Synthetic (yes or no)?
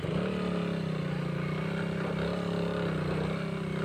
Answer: no